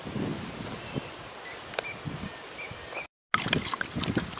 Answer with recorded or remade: recorded